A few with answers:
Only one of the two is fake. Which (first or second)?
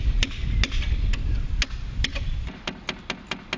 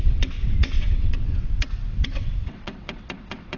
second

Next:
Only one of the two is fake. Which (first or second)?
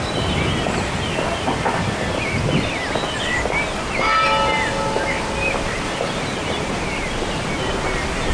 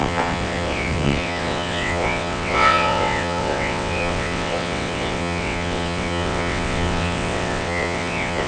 second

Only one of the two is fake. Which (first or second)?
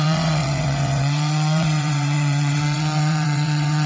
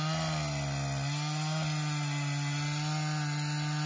first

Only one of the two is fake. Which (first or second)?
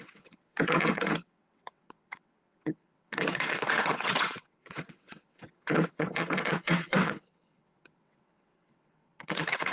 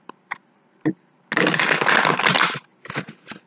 first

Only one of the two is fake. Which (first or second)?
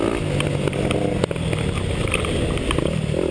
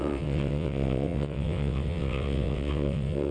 second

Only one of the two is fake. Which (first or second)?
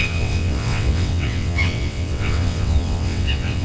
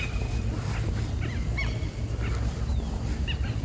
first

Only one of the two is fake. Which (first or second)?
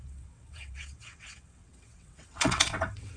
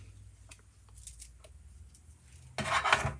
first